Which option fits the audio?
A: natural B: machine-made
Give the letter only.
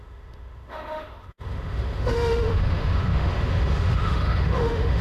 B